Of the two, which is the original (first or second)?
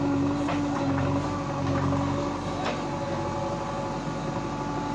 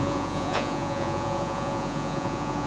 first